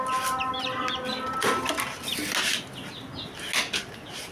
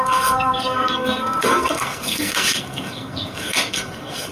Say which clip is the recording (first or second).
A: first